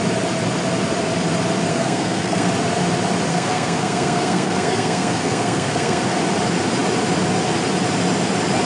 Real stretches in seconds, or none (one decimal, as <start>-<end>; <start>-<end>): 0.0-1.7; 2.5-3.3; 6.0-8.7